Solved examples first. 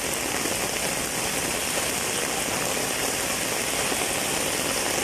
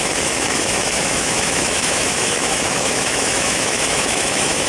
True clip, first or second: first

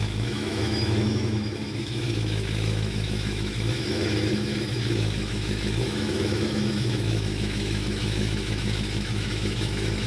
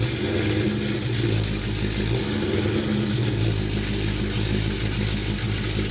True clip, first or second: second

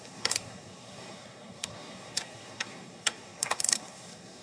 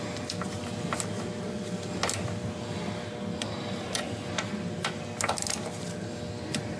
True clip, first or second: second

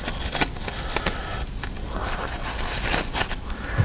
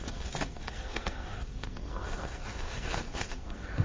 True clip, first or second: first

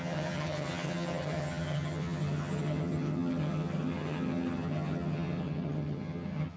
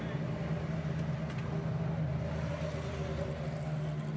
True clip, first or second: second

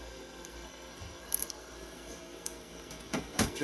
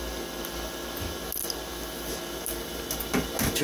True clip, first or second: second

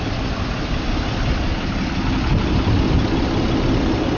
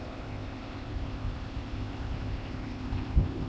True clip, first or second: first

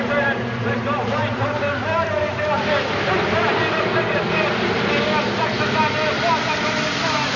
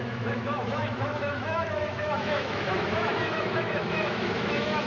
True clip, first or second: first